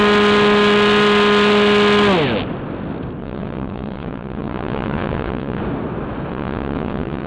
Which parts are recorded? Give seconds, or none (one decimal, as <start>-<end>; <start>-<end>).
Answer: 0.0-3.2; 5.6-6.3